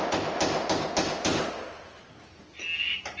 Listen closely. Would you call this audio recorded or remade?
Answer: recorded